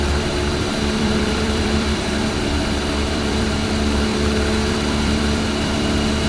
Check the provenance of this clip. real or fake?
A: fake